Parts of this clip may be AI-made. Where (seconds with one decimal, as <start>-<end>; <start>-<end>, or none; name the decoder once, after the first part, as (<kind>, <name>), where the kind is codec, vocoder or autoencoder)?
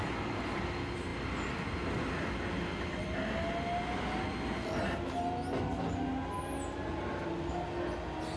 none